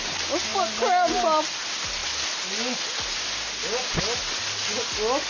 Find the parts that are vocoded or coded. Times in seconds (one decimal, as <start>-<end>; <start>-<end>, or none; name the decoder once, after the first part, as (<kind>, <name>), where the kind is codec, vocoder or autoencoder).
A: none